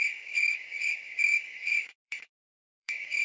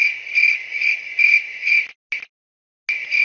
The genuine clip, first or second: second